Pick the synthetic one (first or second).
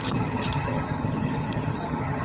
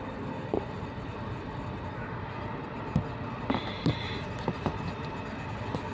first